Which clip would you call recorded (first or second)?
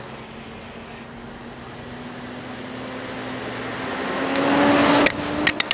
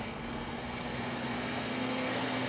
first